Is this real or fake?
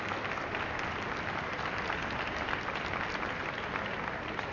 real